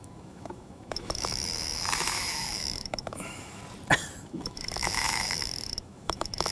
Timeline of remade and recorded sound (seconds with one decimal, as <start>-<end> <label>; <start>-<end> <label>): 0.0-3.6 remade; 3.6-4.2 recorded; 4.2-6.5 remade